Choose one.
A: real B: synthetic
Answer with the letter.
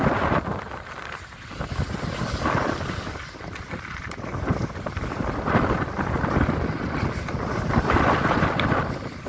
A